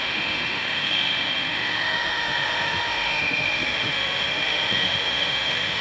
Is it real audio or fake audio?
fake